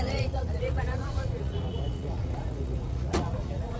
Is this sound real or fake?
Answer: fake